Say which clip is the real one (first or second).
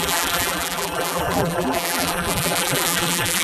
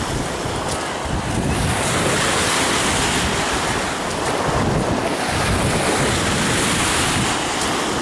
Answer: second